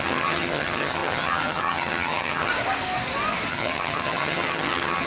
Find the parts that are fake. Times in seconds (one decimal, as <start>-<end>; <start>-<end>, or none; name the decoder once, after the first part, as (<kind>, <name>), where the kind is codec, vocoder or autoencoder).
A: 0.0-2.5 (vocoder, HiFi-GAN); 3.5-5.1